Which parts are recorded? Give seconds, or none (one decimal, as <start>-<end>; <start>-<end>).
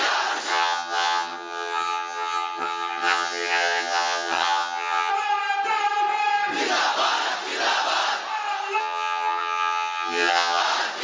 0.0-0.5; 5.1-8.8; 10.6-11.0